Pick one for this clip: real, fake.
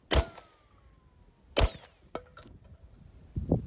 real